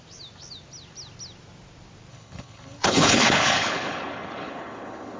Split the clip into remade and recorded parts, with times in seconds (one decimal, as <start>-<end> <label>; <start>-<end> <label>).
0.0-2.1 recorded; 2.1-5.2 remade